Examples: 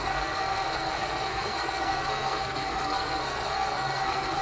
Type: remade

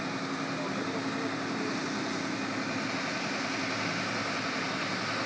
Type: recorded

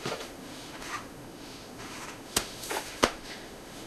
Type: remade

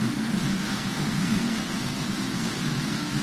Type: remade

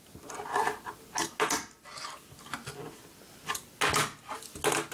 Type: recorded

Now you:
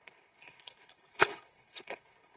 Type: remade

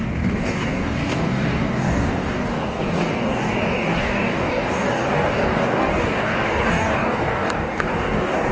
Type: remade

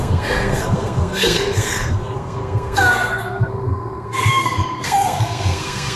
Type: remade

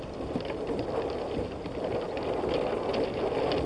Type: recorded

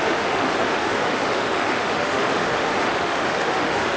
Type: remade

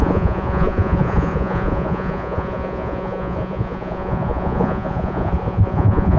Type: remade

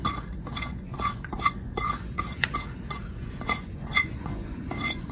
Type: remade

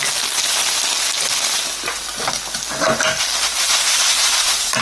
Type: recorded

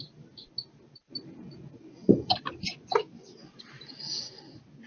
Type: recorded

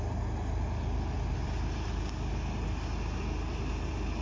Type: recorded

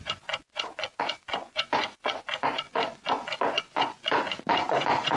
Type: remade